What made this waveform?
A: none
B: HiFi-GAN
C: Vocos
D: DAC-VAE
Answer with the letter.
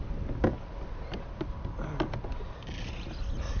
A